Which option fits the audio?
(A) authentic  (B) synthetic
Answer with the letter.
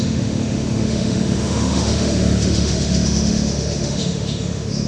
B